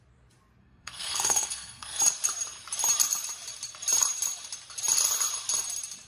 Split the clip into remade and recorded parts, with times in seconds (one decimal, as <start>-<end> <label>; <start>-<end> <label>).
0.0-0.6 recorded; 0.6-2.0 remade; 2.0-6.1 recorded